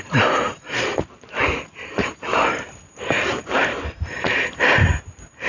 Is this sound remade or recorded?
remade